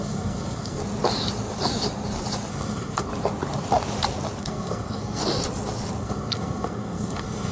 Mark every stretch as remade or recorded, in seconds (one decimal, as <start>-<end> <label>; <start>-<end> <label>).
0.0-0.8 remade; 0.8-2.5 recorded; 2.5-3.1 remade; 3.1-4.4 recorded; 4.4-5.2 remade; 5.2-6.0 recorded; 6.0-7.5 remade